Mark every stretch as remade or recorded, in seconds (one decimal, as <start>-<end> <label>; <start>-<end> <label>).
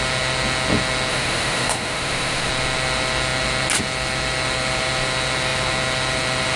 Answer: 0.0-1.1 recorded; 1.1-2.5 remade; 2.5-6.6 recorded